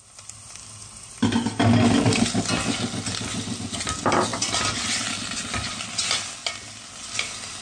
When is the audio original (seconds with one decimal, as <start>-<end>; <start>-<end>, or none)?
0.0-7.6